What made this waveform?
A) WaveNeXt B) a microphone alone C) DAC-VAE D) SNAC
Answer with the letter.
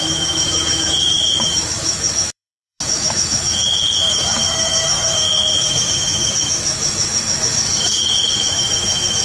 C